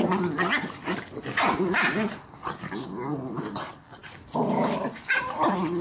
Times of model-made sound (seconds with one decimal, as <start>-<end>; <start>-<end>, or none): none